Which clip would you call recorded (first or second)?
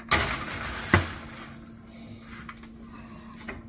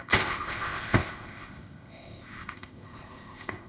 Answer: first